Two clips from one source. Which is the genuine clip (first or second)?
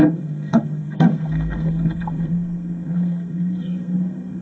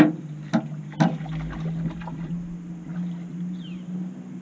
second